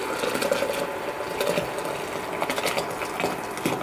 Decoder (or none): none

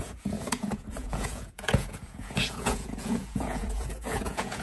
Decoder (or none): vocoder, Vocos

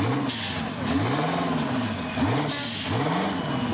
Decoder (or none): none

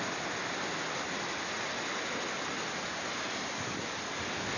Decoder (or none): none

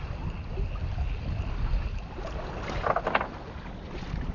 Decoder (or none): none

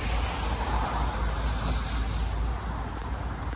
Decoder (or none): none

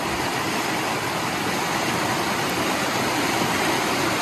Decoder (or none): none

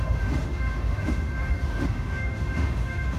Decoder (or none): autoencoder, DAC-VAE